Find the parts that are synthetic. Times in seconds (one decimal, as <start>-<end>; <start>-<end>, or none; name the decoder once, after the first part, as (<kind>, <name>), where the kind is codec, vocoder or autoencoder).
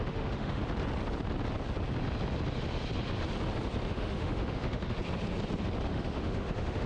0.0-0.6 (autoencoder, DAC-VAE); 3.9-5.0; 5.9-6.9